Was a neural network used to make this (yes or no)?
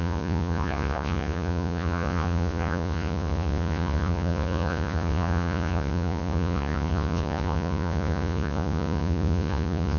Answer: yes